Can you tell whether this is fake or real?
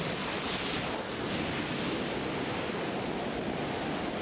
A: real